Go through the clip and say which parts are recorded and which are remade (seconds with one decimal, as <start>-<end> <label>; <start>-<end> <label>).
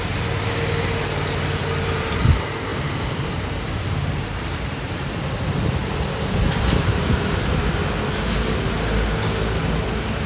0.0-2.7 recorded; 2.7-7.7 remade; 7.7-10.3 recorded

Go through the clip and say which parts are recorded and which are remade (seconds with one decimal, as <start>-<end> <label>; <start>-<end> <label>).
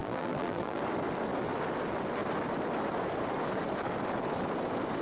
0.0-0.8 remade; 0.8-5.0 recorded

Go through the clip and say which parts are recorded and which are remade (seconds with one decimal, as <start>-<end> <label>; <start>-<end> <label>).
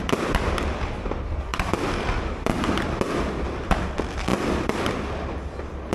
0.0-4.3 recorded; 4.3-5.3 remade; 5.3-5.9 recorded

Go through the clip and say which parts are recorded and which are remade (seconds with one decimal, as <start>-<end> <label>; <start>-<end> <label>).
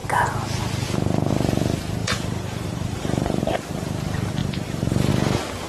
0.0-2.0 recorded; 2.0-3.4 remade; 3.4-4.4 recorded; 4.4-5.1 remade; 5.1-5.7 recorded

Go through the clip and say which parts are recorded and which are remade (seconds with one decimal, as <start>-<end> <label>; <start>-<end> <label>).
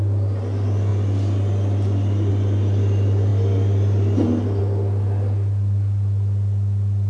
0.0-7.1 recorded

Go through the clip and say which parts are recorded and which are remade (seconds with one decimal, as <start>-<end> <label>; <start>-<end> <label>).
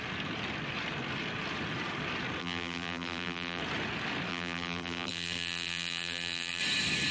0.0-2.4 recorded; 2.4-3.6 remade; 3.6-4.3 recorded; 4.3-6.6 remade; 6.6-7.1 recorded